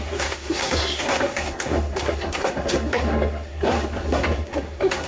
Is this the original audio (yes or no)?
no